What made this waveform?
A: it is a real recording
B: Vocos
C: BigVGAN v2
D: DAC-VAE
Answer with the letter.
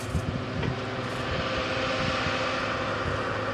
A